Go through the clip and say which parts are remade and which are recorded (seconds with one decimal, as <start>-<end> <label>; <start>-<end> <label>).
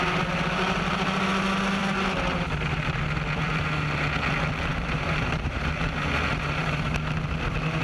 0.0-4.7 recorded; 4.7-5.6 remade; 5.6-7.8 recorded